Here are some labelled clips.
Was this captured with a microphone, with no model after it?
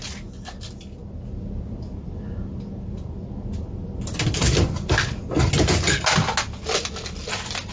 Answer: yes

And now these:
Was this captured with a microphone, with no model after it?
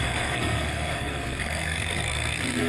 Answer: no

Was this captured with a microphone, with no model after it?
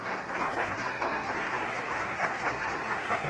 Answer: no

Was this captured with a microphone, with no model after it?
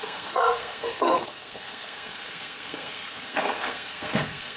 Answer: no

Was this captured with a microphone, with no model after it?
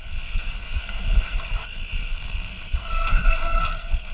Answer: no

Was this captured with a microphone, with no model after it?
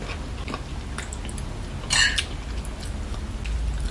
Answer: yes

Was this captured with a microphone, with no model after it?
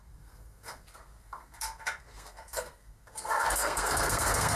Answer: no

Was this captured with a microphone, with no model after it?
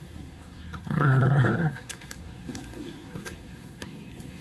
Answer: no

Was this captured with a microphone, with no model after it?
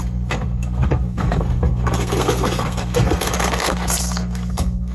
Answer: no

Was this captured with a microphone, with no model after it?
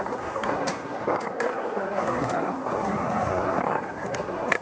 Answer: no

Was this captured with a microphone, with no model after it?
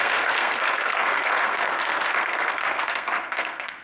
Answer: no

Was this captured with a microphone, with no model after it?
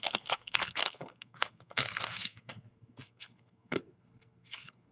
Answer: no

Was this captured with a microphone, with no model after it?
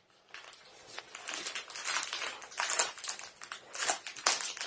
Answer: yes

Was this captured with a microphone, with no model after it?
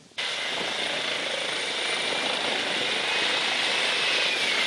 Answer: yes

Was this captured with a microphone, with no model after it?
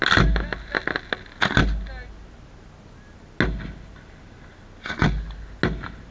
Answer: yes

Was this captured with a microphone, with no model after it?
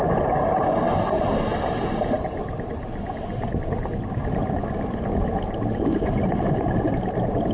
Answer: yes